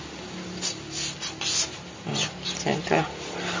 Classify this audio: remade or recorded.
recorded